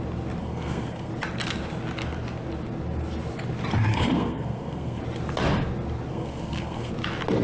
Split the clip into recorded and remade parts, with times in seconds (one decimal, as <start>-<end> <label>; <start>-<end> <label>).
0.0-0.4 recorded; 0.4-1.1 remade; 1.1-3.9 recorded; 3.9-5.0 remade; 5.0-6.1 recorded; 6.1-6.9 remade; 6.9-7.4 recorded